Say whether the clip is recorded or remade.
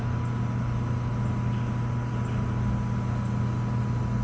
recorded